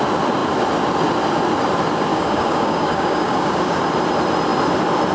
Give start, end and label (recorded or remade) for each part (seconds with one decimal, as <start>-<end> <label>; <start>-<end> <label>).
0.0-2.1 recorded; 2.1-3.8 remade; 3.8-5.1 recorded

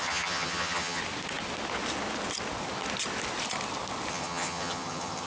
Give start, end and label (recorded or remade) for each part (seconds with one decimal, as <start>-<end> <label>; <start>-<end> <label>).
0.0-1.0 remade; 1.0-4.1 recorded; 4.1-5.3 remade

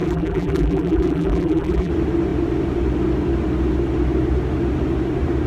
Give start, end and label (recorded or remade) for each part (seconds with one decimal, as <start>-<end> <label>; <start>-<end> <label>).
0.0-1.9 remade; 1.9-5.5 recorded